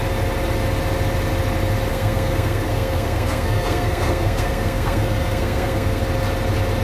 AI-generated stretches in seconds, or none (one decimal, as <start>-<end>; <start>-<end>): 1.9-6.0